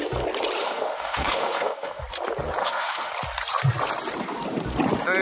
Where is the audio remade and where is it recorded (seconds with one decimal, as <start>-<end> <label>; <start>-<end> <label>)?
0.0-0.6 recorded; 0.6-2.0 remade; 2.0-2.6 recorded; 2.6-3.1 remade; 3.1-5.2 recorded